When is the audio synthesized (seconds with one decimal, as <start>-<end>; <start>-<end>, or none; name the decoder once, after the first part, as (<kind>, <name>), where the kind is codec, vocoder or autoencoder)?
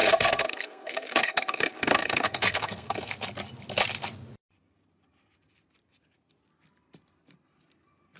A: 0.0-3.1 (codec, SNAC)